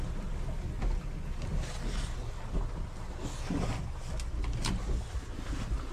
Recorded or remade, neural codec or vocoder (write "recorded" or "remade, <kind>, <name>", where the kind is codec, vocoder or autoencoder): recorded